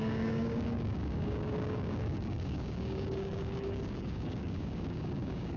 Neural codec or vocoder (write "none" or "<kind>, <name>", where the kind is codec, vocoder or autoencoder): codec, DAC